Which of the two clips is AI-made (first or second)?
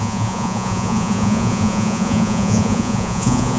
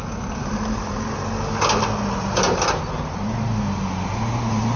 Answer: first